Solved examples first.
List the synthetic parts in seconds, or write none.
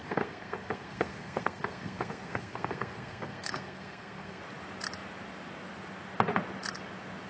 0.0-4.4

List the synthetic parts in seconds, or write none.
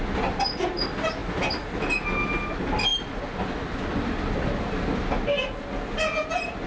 none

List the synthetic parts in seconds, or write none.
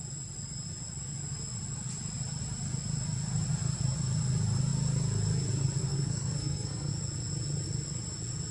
5.9-6.9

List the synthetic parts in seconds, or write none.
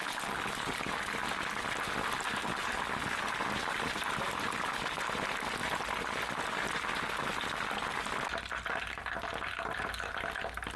none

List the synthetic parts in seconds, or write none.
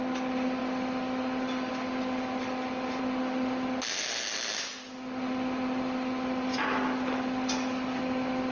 none